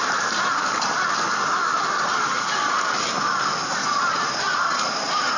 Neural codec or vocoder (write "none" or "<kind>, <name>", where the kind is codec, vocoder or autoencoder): none